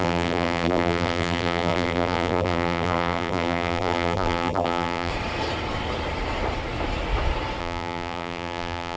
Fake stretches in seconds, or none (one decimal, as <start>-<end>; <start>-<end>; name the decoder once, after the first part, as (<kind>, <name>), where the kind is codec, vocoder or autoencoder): 0.0-5.1 (vocoder, BigVGAN v2); 7.6-9.0